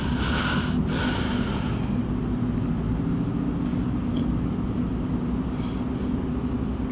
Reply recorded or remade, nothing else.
recorded